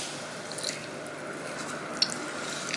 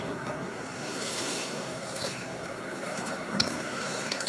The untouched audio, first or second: first